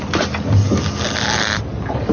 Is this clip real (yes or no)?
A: yes